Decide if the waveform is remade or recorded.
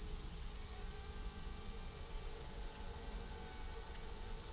remade